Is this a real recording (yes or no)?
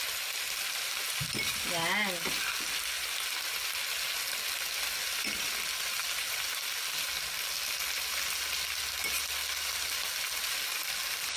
yes